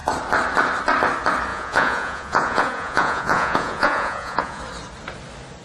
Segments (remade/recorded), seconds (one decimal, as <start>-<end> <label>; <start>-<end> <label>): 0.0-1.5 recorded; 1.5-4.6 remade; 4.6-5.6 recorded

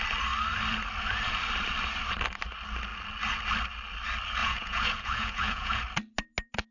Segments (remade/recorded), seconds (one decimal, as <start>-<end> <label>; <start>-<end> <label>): 0.0-4.4 recorded; 4.4-5.8 remade; 5.8-6.7 recorded

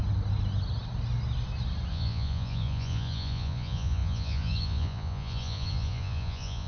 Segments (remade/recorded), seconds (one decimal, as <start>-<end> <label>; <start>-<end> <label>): 0.0-1.9 recorded; 1.9-6.7 remade

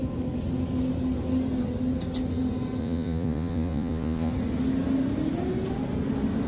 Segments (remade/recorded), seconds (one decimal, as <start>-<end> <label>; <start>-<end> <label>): 0.0-2.8 recorded; 2.8-4.3 remade; 4.3-6.5 recorded